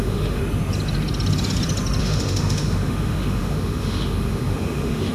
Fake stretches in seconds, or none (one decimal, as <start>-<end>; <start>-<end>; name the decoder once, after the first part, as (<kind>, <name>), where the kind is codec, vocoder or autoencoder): 0.0-0.4 (autoencoder, DAC-VAE); 2.0-5.1